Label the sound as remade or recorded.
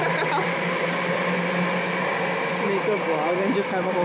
recorded